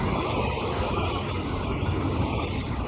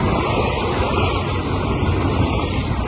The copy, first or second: first